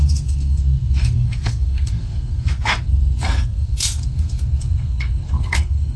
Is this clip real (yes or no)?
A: no